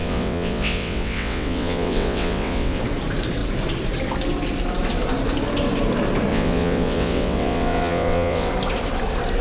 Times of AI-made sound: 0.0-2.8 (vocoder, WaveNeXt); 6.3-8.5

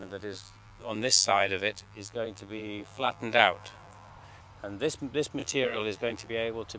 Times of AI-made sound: 0.0-4.1 (vocoder, BigVGAN v2); 5.4-6.3

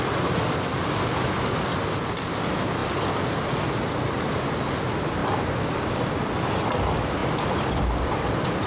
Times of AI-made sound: 5.2-6.4 (vocoder, BigVGAN v2); 7.2-8.7

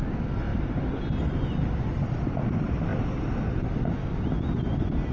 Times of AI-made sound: none

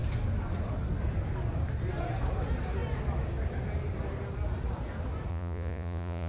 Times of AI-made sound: 5.3-6.3 (vocoder, Vocos)

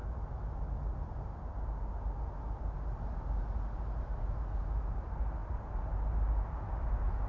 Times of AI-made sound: 4.0-7.3 (vocoder, BigVGAN v2)